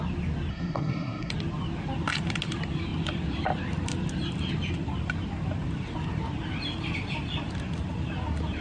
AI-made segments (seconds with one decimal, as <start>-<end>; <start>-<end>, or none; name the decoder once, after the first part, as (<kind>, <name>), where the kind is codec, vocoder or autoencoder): 0.5-1.3 (codec, SNAC)